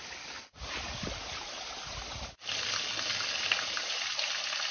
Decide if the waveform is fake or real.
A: real